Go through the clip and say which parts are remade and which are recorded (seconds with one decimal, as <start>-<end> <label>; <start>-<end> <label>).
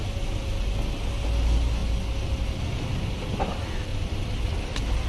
0.0-3.9 recorded; 3.9-5.1 remade